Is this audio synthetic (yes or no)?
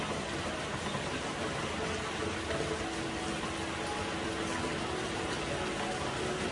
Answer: no